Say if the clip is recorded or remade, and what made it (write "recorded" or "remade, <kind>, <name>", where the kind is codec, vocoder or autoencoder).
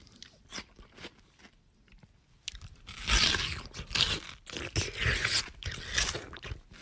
recorded